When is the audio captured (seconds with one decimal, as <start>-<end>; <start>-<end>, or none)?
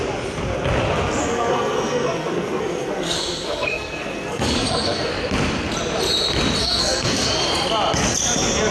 0.0-1.2; 5.1-6.6; 7.5-8.7